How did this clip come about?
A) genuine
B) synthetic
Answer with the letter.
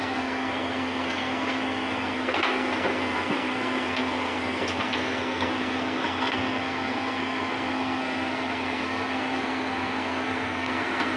B